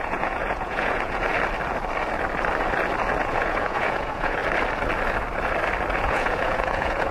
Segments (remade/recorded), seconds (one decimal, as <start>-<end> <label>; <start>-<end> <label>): 0.0-1.3 remade; 1.3-3.2 recorded; 3.2-4.4 remade; 4.4-6.0 recorded; 6.0-7.1 remade